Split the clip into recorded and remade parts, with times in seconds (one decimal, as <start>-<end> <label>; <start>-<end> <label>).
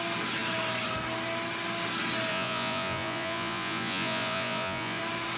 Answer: 0.0-2.3 recorded; 2.3-5.0 remade; 5.0-5.4 recorded